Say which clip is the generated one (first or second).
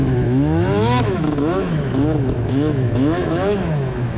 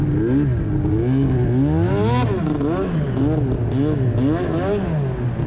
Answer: first